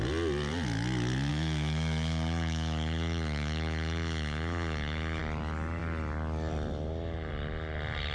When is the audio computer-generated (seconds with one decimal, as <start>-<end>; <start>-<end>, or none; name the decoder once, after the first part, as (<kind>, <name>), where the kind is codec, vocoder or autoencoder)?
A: 1.3-5.2 (autoencoder, DAC-VAE)